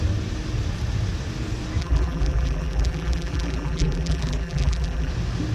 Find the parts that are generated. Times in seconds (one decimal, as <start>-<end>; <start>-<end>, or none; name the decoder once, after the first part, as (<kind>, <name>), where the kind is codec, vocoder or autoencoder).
1.8-5.1 (vocoder, BigVGAN v2)